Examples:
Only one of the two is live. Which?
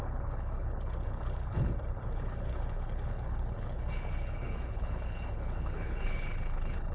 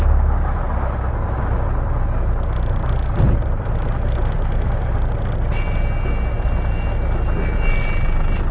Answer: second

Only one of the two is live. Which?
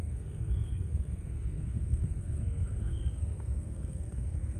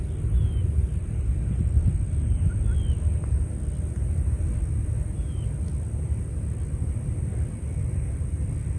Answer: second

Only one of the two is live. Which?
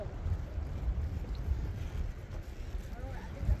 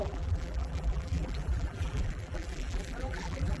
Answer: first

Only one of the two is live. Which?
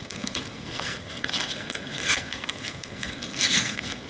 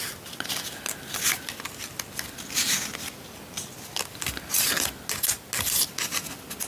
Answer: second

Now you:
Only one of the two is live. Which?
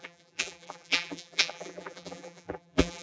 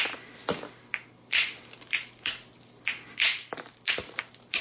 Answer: second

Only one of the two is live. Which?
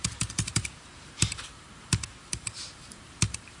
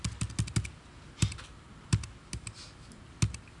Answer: second